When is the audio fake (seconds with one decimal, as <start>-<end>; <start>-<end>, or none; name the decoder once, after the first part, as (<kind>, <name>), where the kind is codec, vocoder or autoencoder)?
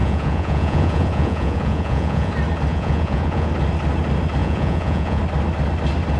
0.0-2.3 (vocoder, Vocos); 2.7-3.5; 4.4-5.2